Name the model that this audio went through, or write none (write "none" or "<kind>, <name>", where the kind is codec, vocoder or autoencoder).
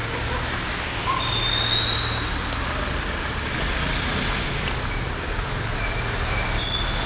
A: none